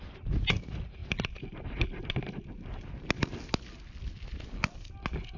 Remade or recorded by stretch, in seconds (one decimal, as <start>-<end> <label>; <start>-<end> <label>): 0.0-5.4 recorded